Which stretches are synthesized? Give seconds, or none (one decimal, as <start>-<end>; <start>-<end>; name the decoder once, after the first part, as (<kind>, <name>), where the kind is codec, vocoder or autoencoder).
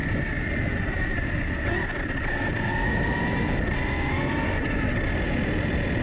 none